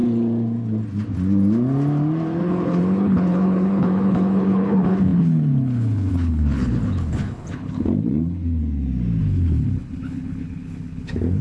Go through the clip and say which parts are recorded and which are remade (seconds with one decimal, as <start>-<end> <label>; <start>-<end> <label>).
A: 0.0-2.4 recorded; 2.4-8.6 remade; 8.6-9.2 recorded; 9.2-11.4 remade